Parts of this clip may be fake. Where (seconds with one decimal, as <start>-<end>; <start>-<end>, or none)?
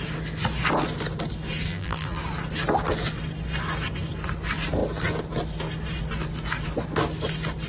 1.7-2.2